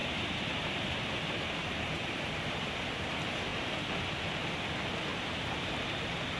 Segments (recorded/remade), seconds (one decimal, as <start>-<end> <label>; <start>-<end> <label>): 0.0-2.7 remade; 2.7-5.1 recorded; 5.1-5.9 remade; 5.9-6.4 recorded